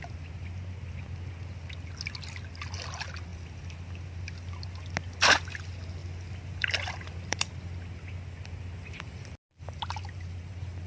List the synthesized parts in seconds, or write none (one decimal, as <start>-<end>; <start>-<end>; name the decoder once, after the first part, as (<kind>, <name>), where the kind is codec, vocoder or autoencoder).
3.3-4.5 (vocoder, BigVGAN v2); 6.0-7.5